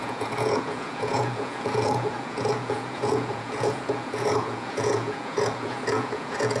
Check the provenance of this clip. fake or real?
fake